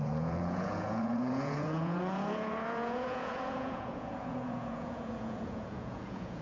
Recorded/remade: remade